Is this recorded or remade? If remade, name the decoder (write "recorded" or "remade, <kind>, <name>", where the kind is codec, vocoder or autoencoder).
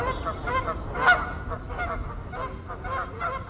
recorded